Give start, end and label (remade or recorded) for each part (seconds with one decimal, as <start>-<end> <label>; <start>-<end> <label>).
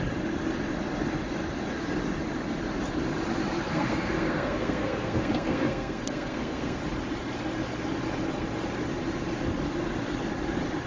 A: 0.0-3.7 recorded; 3.7-6.8 remade; 6.8-10.9 recorded